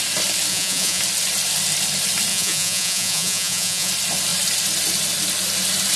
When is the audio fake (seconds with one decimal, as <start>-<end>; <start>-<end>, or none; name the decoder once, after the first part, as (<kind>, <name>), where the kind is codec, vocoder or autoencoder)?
0.5-1.0 (vocoder, Vocos); 2.3-3.9